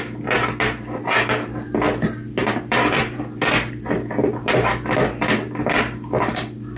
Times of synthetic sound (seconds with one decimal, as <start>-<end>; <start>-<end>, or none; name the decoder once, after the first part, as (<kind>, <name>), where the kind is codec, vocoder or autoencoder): 2.4-3.2 (vocoder, BigVGAN v2)